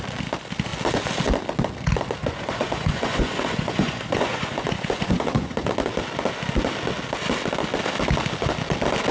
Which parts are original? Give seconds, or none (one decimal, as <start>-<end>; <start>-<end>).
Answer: 0.0-2.2; 5.7-9.1